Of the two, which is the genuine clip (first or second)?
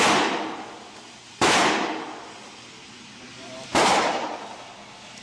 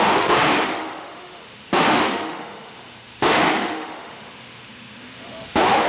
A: first